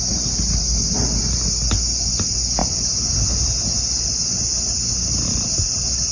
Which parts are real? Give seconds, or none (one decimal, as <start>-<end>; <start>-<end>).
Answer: 0.0-6.1